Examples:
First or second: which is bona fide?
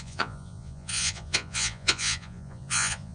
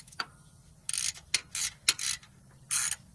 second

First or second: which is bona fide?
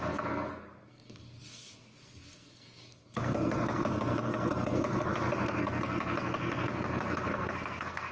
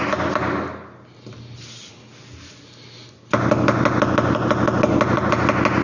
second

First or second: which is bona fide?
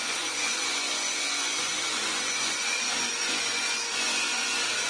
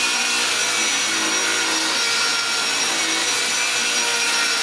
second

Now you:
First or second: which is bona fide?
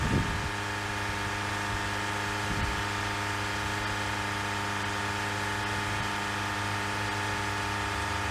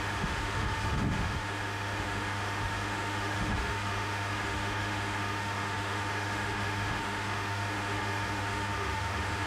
first